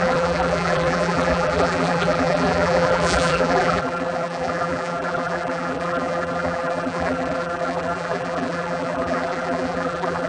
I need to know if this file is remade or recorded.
remade